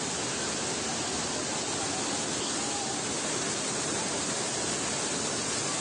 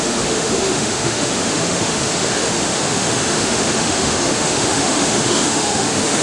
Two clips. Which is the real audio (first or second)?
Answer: first